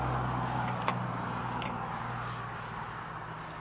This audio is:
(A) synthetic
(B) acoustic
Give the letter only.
B